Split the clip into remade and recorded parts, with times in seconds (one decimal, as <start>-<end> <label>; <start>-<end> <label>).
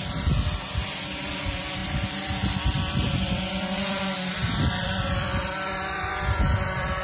0.0-7.0 remade